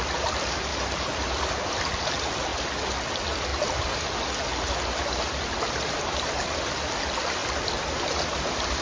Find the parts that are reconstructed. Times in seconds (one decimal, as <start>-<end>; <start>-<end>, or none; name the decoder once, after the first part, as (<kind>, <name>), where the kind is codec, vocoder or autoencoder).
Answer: 0.0-0.7 (vocoder, BigVGAN v2); 1.8-2.5; 3.1-3.5; 5.9-7.4; 8.4-8.8